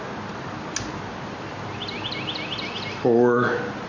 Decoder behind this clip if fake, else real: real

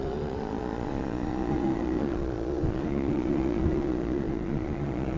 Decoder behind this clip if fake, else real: fake, vocoder, Vocos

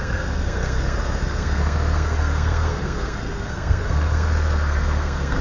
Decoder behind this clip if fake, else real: fake, codec, SNAC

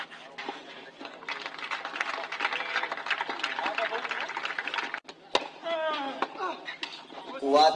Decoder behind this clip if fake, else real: real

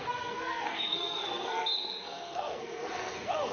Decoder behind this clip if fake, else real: fake, codec, SNAC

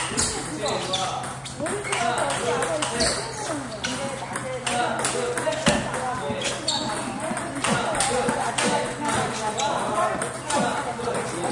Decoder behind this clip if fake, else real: real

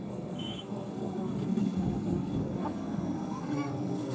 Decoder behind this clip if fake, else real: fake, codec, SNAC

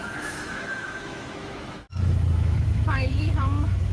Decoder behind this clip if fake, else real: fake, autoencoder, DAC-VAE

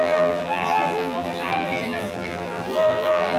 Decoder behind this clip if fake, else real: fake, vocoder, BigVGAN v2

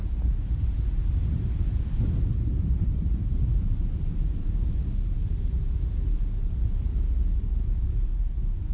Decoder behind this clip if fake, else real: fake, vocoder, BigVGAN v2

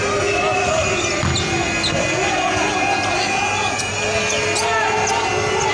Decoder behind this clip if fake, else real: real